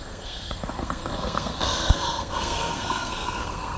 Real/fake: fake